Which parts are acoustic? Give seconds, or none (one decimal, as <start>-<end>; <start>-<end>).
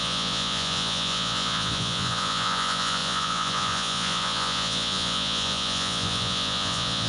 none